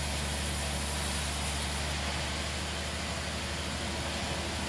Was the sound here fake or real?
real